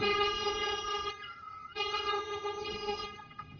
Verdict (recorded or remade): remade